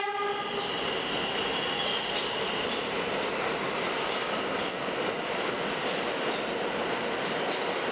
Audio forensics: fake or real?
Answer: real